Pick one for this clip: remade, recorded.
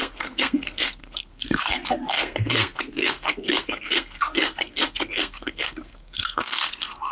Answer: remade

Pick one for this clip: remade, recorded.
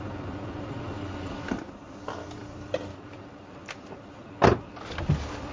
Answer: recorded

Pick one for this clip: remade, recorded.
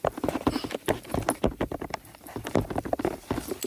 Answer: recorded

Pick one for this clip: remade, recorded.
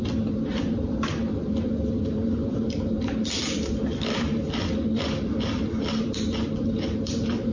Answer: remade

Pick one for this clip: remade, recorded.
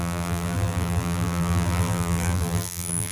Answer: remade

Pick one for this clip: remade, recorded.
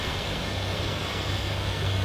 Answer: remade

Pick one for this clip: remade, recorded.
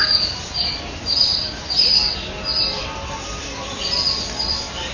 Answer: recorded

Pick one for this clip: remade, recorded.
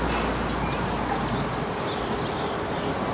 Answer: recorded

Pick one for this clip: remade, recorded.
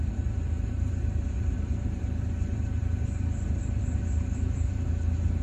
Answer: remade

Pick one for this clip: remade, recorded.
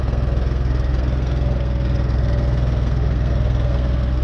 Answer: remade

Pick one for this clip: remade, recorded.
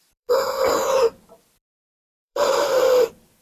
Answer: remade